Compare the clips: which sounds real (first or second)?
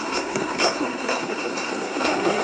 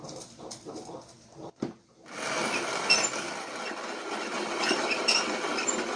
second